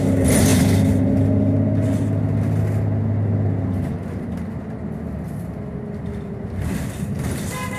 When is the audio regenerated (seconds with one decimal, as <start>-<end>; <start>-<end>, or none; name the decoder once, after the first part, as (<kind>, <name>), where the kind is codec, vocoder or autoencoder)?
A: none